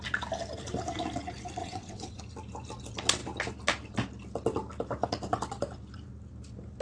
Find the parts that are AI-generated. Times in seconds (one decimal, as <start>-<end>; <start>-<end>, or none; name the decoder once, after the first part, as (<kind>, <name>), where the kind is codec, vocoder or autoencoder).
1.6-2.2 (vocoder, WaveNeXt)